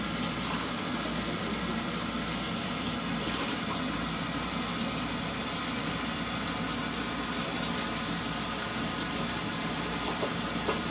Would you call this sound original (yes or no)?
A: yes